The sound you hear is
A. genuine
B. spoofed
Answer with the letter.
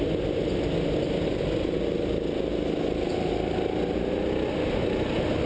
A